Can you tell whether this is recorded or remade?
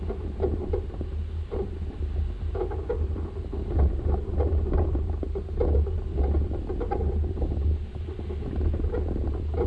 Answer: recorded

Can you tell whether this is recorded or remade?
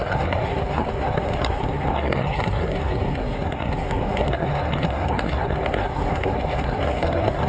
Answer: remade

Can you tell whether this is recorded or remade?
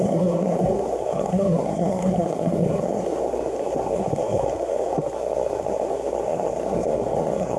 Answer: remade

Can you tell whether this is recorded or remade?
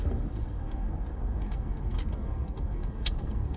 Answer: remade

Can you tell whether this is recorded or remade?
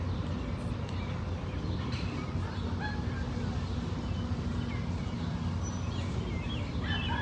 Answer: recorded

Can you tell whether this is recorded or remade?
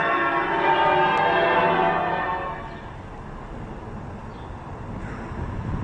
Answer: recorded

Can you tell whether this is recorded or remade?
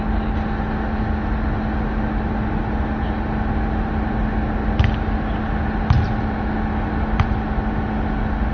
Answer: recorded